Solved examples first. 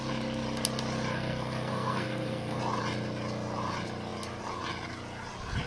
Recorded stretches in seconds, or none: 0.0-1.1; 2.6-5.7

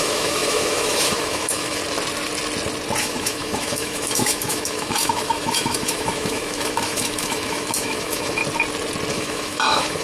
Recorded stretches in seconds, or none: 1.8-3.0; 8.4-9.1

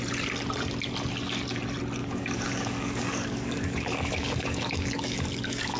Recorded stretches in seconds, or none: 0.0-2.0